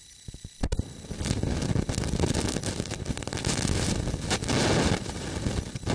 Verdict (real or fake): real